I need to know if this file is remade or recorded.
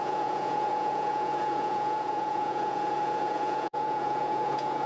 remade